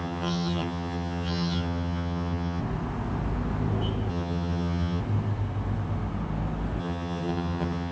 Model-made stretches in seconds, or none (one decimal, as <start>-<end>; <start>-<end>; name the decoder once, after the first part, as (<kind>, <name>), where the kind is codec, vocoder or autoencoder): 0.0-2.6 (vocoder, HiFi-GAN); 4.1-5.0; 6.8-7.9